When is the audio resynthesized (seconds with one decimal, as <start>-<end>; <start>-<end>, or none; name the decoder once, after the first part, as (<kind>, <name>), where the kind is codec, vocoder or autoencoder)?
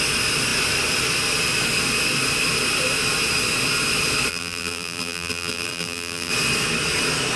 4.3-6.3 (vocoder, BigVGAN v2)